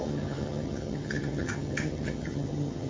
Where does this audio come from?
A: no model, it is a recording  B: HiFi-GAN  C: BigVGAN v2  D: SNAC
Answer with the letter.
B